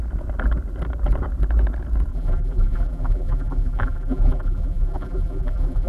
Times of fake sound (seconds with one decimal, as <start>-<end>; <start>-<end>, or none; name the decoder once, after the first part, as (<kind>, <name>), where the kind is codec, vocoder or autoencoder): 2.1-5.9 (vocoder, BigVGAN v2)